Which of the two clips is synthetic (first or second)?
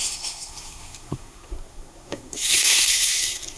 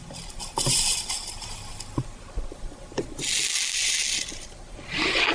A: first